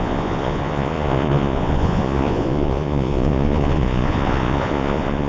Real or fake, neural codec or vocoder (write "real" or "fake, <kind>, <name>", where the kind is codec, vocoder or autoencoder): fake, vocoder, Vocos